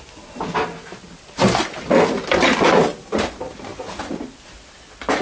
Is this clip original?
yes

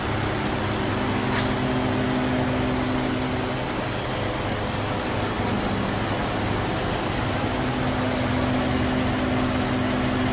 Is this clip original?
yes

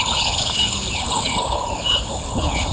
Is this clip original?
no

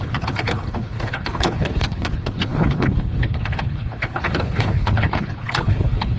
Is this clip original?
no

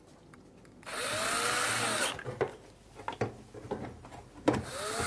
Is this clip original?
yes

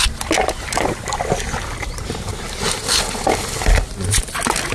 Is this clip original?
yes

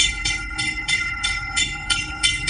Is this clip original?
no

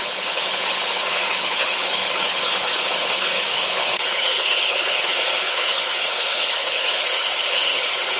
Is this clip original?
no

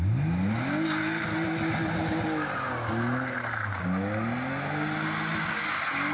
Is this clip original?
yes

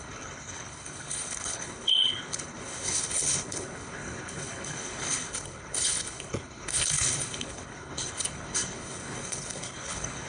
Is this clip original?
no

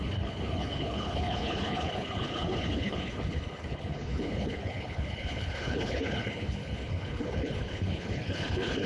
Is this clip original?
no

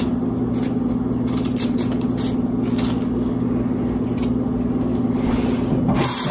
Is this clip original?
yes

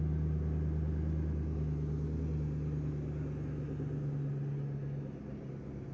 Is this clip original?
yes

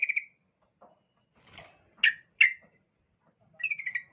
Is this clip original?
yes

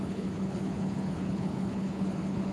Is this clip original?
no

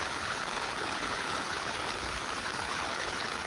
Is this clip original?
no